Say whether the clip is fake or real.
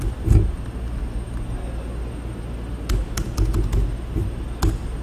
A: real